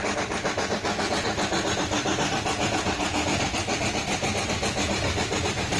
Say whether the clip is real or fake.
real